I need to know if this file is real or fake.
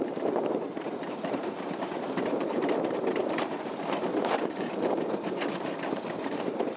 fake